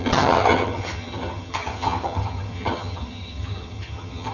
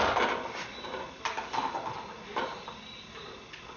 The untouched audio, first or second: second